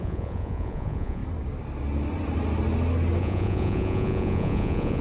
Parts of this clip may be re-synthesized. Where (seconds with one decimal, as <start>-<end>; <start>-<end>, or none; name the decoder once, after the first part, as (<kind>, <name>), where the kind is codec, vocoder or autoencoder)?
0.0-1.2 (vocoder, Vocos); 3.2-5.0